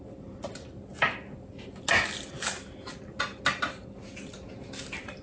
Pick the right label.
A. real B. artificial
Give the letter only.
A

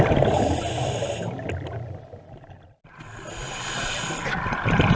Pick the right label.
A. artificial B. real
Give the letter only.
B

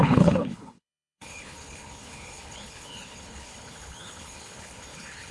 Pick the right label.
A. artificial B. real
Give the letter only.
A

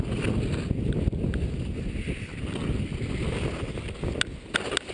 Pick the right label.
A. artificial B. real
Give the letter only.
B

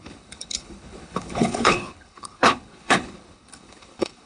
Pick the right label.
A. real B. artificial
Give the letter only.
B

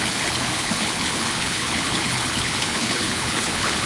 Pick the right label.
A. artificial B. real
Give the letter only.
A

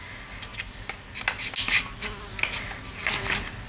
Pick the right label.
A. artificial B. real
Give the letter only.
B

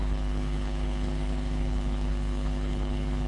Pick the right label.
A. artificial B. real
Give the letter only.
A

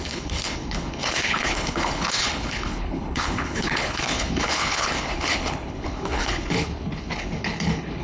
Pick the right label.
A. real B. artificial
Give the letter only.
B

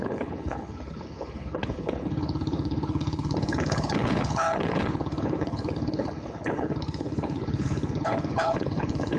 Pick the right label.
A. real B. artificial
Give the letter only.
B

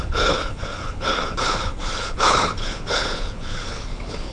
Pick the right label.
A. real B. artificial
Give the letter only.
B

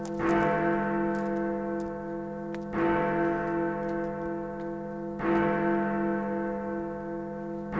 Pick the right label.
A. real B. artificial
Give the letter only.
A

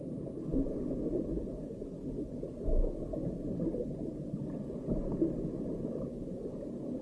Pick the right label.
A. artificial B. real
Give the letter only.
B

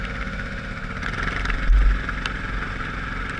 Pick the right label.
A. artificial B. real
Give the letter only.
B